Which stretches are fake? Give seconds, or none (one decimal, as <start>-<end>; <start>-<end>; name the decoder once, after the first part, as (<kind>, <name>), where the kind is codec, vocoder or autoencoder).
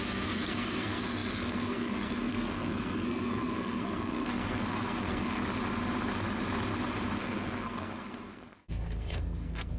0.0-5.4 (codec, SNAC); 7.2-9.8